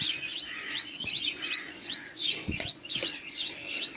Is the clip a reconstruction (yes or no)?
yes